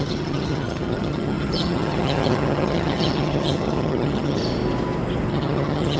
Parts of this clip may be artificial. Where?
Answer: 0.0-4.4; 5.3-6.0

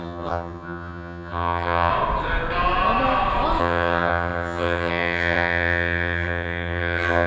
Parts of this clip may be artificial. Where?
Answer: 0.0-1.9; 3.6-7.3

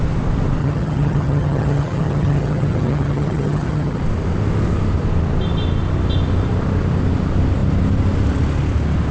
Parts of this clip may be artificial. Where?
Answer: 0.6-4.0

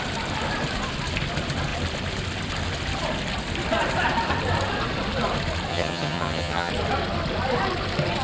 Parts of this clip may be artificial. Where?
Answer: 5.7-6.7

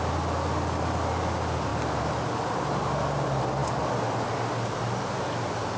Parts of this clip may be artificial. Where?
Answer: none

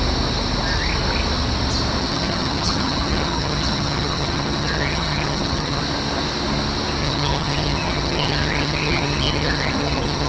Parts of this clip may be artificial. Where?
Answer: 2.0-5.8; 7.0-10.3

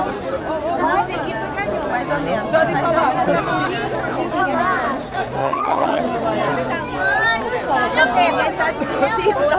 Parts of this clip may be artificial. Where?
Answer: 5.4-6.0

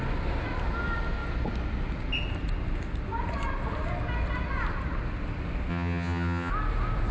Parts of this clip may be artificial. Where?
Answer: 5.7-6.5